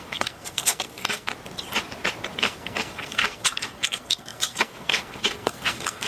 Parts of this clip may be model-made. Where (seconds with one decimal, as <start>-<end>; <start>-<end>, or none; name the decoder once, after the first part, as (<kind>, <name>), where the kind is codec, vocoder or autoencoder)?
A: 0.0-1.3 (codec, SNAC); 2.4-6.1